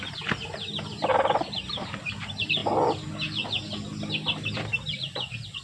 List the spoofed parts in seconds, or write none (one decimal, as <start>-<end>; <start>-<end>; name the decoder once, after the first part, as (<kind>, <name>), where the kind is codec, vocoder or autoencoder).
none

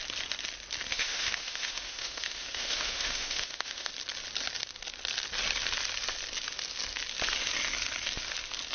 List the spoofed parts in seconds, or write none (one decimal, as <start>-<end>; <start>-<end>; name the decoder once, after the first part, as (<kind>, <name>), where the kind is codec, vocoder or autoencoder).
0.9-3.9 (autoencoder, DAC-VAE)

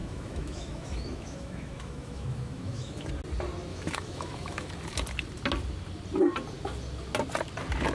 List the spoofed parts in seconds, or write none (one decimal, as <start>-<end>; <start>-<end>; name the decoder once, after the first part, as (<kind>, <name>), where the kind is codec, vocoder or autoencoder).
0.0-3.1 (autoencoder, DAC-VAE); 3.7-4.7

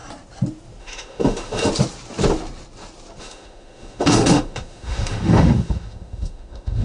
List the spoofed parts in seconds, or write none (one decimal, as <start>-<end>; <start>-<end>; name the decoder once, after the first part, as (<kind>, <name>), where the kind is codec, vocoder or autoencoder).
0.8-1.7 (autoencoder, DAC-VAE); 3.2-6.8

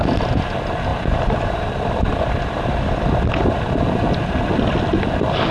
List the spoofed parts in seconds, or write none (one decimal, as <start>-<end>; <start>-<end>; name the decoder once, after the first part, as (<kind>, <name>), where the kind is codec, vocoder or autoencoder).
none